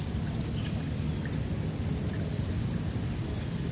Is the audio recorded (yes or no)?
yes